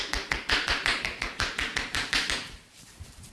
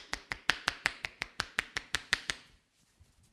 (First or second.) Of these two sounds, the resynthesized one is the first